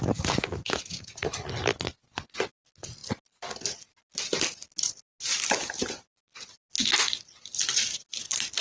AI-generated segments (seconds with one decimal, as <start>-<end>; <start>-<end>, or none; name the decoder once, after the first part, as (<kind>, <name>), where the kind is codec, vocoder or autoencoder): 1.9-2.5 (vocoder, Vocos)